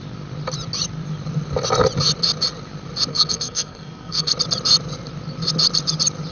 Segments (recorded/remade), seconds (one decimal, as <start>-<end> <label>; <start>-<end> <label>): 0.0-3.1 recorded; 3.1-4.3 remade; 4.3-6.3 recorded

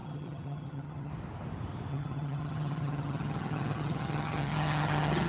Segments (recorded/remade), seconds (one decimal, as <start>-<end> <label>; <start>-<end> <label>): 0.0-1.1 remade; 1.1-1.9 recorded; 1.9-5.3 remade

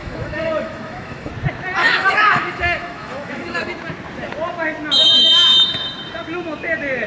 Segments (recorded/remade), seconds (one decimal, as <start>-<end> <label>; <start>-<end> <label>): 0.0-1.3 remade; 1.3-1.8 recorded; 1.8-3.7 remade; 3.7-7.1 recorded

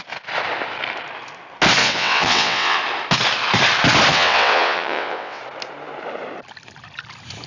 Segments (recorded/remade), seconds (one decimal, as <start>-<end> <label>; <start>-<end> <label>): 0.0-1.8 recorded; 1.8-2.8 remade; 2.8-4.1 recorded; 4.1-5.4 remade; 5.4-7.5 recorded

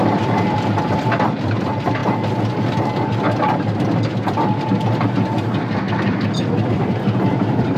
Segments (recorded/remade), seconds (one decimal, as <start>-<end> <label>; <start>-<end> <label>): 0.0-2.0 remade; 2.0-6.7 recorded; 6.7-7.8 remade